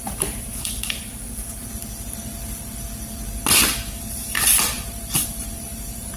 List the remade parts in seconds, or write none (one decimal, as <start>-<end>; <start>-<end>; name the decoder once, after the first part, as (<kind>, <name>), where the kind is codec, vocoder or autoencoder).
0.0-1.6 (vocoder, BigVGAN v2); 4.7-6.2